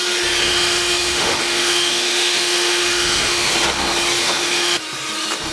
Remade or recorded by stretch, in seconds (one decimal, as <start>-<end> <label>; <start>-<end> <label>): 0.0-0.4 recorded; 0.4-3.5 remade; 3.5-4.2 recorded; 4.2-4.8 remade; 4.8-5.5 recorded